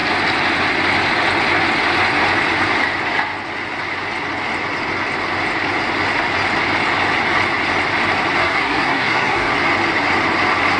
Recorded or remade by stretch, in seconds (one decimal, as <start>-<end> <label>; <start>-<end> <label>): 0.0-8.4 recorded; 8.4-9.5 remade; 9.5-10.8 recorded